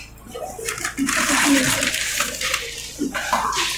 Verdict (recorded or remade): recorded